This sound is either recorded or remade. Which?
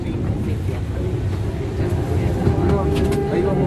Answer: recorded